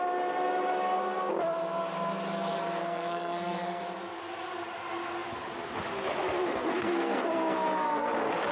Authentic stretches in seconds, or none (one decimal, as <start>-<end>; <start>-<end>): 0.0-2.8; 3.8-6.7; 8.1-8.5